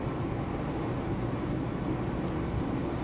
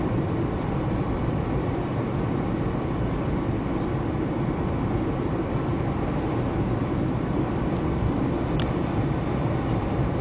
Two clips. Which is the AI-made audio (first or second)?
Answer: second